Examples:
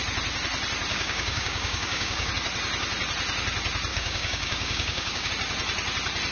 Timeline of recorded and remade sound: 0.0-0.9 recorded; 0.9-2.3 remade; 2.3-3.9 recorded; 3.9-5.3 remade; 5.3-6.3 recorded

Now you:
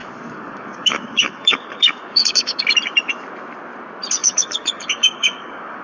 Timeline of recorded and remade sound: 0.0-2.6 remade; 2.6-4.2 recorded; 4.2-5.8 remade